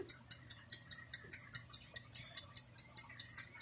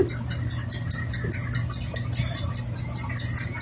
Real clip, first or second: second